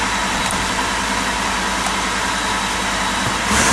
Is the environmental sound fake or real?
real